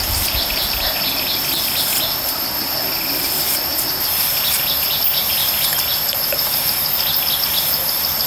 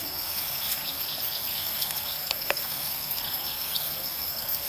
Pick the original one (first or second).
first